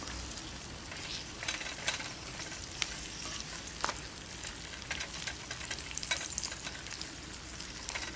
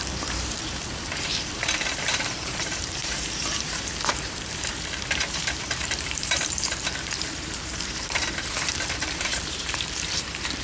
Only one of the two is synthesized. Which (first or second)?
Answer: second